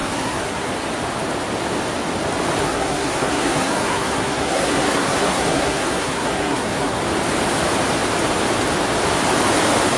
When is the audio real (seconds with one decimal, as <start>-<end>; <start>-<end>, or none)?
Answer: 0.7-2.6; 7.0-10.0